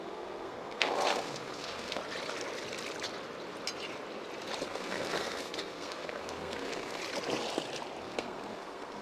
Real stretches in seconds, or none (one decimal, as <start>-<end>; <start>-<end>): 2.0-4.6; 7.0-8.0